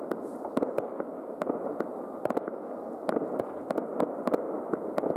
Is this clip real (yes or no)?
yes